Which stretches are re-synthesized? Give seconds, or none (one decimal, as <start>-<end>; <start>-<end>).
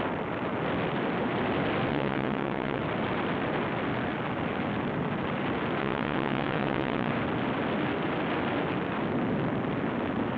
1.9-2.8; 5.8-7.1